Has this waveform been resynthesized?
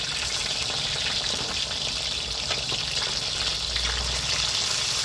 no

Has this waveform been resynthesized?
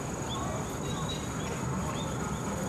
no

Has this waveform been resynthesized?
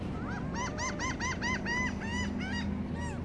no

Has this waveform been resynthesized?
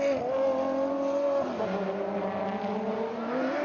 no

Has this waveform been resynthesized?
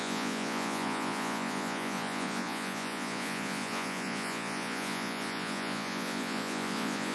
yes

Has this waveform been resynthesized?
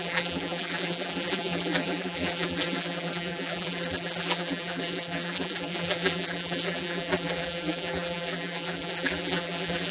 yes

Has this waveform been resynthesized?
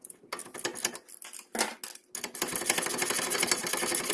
no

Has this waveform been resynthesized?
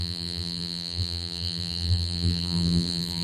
yes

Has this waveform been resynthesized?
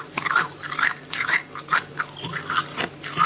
no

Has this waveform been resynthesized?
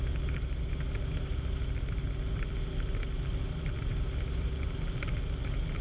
no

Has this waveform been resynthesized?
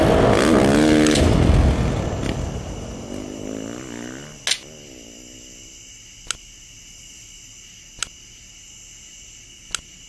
no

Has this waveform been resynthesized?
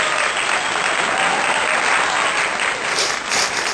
no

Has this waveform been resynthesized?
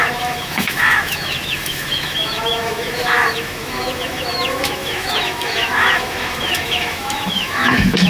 yes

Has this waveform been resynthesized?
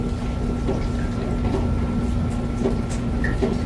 no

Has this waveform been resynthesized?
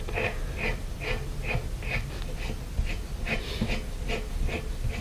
no